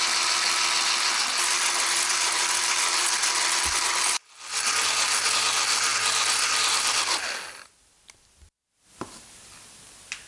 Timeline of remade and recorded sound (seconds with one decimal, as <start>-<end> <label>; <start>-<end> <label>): 0.0-10.3 recorded